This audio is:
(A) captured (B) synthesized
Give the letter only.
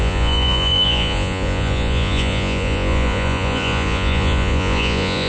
B